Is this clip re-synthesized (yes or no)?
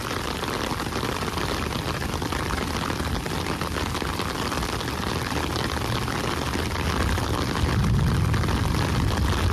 no